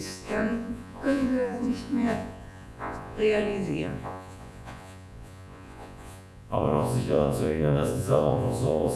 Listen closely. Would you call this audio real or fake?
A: fake